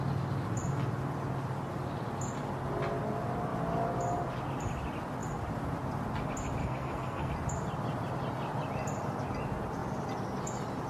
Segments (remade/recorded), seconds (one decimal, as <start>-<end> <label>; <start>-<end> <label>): 0.0-6.6 recorded; 6.6-7.3 remade; 7.3-10.9 recorded